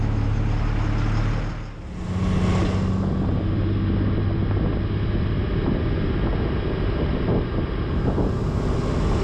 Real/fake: real